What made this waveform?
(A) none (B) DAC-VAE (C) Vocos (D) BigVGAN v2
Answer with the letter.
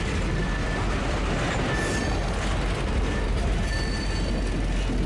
A